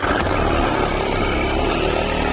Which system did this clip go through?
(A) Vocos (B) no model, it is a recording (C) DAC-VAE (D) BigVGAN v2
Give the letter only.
B